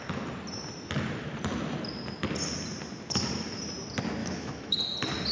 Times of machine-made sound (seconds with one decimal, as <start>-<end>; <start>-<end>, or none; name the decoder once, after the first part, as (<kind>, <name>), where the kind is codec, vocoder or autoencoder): 4.2-4.8 (autoencoder, DAC-VAE)